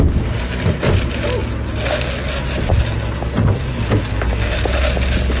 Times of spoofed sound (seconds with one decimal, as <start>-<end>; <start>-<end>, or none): none